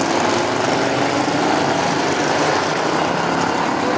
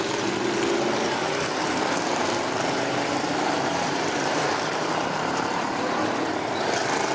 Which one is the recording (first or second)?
first